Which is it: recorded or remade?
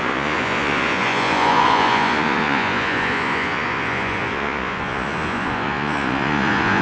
remade